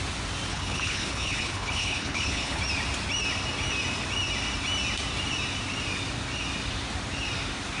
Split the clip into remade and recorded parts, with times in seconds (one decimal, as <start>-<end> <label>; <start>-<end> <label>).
0.0-0.5 recorded; 0.5-2.6 remade; 2.6-7.8 recorded